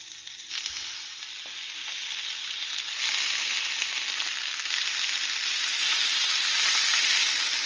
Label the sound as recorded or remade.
recorded